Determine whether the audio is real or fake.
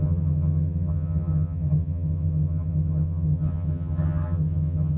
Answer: fake